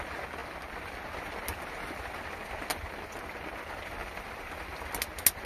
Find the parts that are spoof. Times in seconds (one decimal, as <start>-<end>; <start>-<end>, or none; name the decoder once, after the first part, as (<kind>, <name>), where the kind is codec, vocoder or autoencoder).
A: 4.0-4.9 (vocoder, BigVGAN v2)